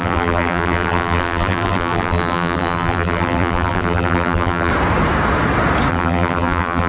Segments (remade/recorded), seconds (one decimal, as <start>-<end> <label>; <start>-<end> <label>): 0.0-4.7 remade; 4.7-5.9 recorded; 5.9-6.9 remade